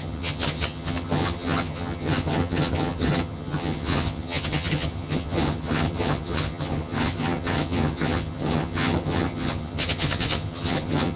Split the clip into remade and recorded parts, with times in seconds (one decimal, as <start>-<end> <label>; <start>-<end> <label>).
0.0-11.2 remade